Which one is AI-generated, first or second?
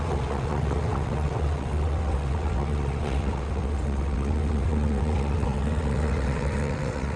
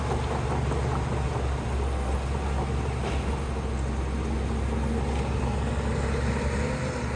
first